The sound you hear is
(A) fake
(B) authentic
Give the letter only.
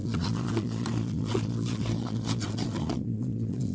A